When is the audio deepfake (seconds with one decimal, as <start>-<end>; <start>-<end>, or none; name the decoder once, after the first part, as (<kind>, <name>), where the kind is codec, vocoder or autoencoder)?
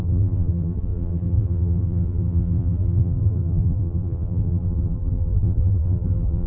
0.0-6.5 (vocoder, BigVGAN v2)